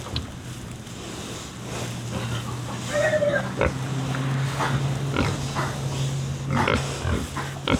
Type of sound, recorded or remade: recorded